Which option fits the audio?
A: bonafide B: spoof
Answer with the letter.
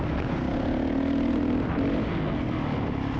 A